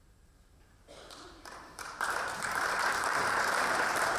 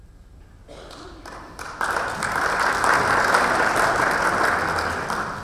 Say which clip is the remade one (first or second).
first